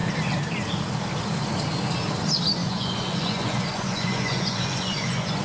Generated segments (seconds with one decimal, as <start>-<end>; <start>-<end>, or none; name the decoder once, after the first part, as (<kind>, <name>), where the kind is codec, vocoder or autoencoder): 2.6-5.4 (vocoder, Vocos)